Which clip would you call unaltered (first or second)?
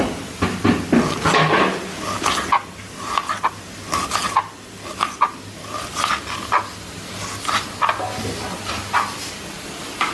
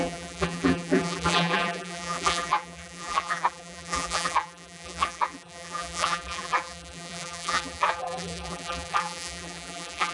first